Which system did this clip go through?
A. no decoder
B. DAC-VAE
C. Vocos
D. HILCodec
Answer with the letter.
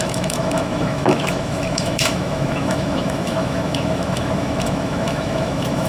B